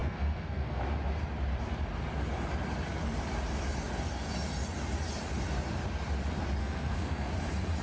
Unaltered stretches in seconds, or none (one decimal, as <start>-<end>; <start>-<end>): 0.8-6.6; 7.3-7.8